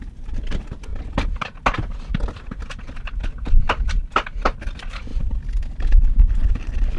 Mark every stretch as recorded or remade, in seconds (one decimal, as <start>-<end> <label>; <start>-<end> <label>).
0.0-0.9 remade; 0.9-4.6 recorded; 4.6-5.1 remade; 5.1-5.7 recorded; 5.7-7.0 remade